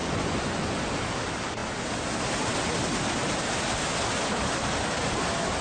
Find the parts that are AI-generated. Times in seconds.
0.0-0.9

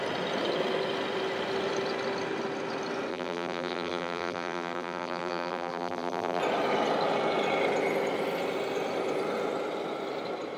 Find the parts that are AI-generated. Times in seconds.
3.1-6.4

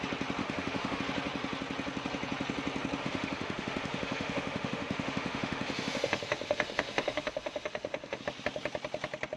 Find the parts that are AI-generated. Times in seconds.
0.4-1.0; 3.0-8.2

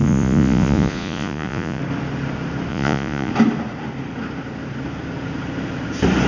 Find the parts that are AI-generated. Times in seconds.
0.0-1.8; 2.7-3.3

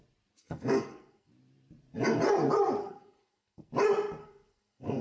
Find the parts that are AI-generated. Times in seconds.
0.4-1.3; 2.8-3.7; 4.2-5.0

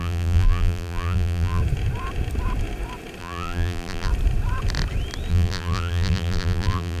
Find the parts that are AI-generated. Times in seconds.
0.0-1.6; 3.2-4.1; 5.3-7.0

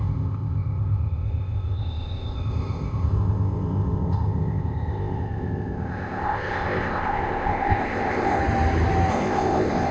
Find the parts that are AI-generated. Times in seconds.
0.0-8.4; 9.1-9.9